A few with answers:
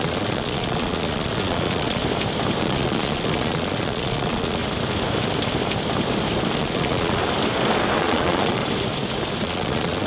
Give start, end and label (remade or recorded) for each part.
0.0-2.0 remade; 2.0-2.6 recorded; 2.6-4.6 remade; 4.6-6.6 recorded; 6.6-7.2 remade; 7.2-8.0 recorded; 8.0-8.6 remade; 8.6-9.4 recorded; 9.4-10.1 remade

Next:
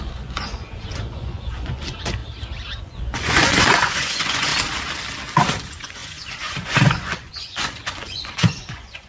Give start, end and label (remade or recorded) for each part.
0.0-2.2 remade; 2.2-2.8 recorded; 2.8-4.5 remade; 4.5-5.6 recorded; 5.6-9.1 remade

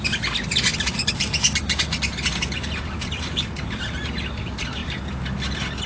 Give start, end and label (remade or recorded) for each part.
0.0-5.9 recorded

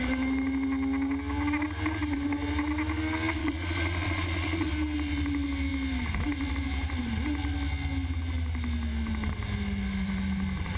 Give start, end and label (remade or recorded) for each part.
0.0-3.4 recorded; 3.4-4.7 remade; 4.7-10.8 recorded